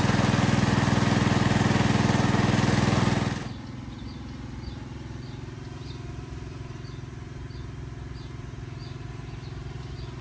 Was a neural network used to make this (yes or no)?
no